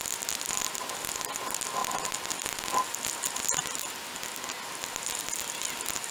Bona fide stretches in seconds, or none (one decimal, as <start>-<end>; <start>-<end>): 0.0-6.1